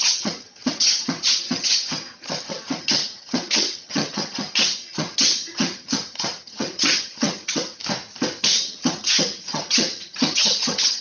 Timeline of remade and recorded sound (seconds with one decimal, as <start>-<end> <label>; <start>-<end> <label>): 0.0-7.8 remade; 7.8-8.4 recorded; 8.4-11.0 remade